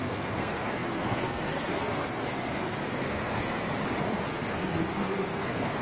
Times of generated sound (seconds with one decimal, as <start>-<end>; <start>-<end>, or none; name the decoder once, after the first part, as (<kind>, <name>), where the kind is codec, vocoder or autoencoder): 0.0-3.7 (codec, SNAC); 4.3-5.8